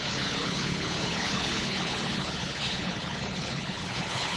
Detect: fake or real fake